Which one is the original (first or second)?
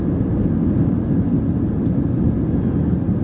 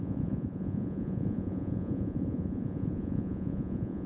first